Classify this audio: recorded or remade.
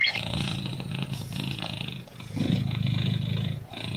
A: remade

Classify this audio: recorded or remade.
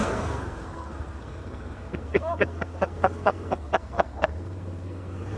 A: remade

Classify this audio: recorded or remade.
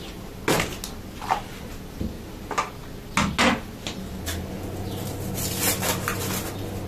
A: recorded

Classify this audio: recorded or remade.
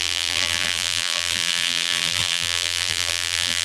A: remade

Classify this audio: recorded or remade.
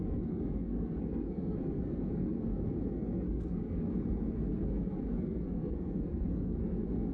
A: remade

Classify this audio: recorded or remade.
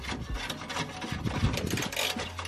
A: recorded